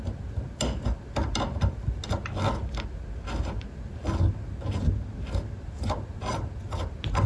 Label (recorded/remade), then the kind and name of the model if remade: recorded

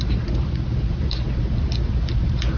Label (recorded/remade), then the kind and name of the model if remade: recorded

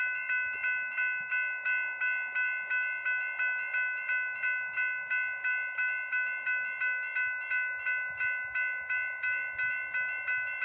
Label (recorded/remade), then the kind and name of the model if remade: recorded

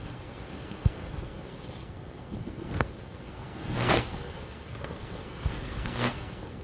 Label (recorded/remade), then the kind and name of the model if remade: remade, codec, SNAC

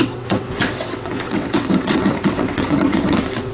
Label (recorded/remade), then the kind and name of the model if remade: remade, vocoder, WaveNeXt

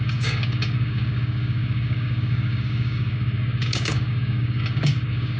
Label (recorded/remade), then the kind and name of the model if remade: remade, codec, DAC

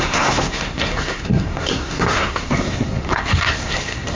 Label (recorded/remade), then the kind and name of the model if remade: remade, codec, SNAC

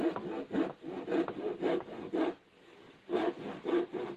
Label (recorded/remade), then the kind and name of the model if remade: recorded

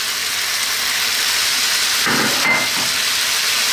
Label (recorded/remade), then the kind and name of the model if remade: recorded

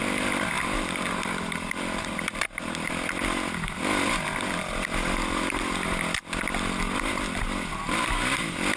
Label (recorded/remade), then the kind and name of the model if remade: recorded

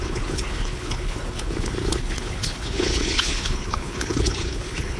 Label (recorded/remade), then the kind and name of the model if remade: remade, codec, HILCodec